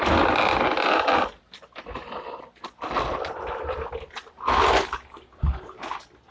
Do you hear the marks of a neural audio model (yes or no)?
no